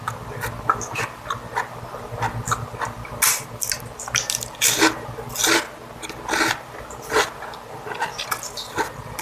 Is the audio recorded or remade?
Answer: recorded